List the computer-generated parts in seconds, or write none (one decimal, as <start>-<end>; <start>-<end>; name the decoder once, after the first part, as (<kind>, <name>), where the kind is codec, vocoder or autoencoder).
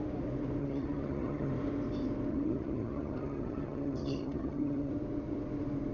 0.6-1.5 (vocoder, HiFi-GAN); 2.3-4.9